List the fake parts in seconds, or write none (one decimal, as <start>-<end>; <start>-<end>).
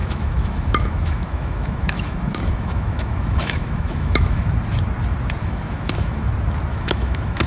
0.0-4.5; 5.4-6.3; 6.7-7.5